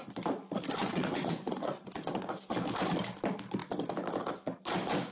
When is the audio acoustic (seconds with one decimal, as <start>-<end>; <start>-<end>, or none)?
0.0-0.8; 2.4-5.1